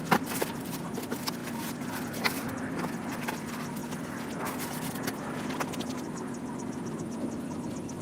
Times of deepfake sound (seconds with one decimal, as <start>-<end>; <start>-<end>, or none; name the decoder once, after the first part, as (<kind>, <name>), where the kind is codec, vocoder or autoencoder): 0.0-1.4 (vocoder, BigVGAN v2); 2.1-3.8; 7.4-8.0